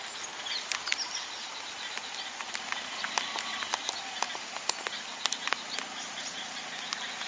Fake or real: fake